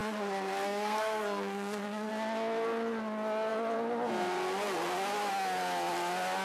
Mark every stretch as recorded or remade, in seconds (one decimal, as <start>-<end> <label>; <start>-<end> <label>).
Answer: 0.0-2.1 remade; 2.1-6.4 recorded